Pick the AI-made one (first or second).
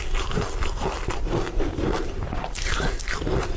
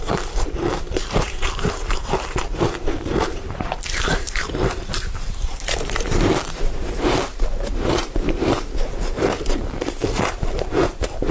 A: second